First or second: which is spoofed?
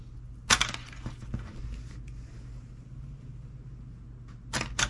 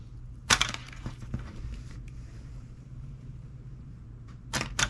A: second